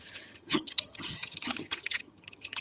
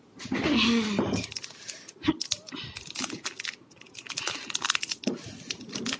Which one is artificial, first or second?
first